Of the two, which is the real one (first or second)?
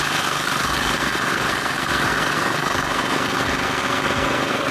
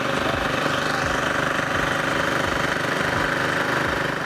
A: second